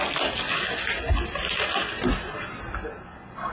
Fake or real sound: real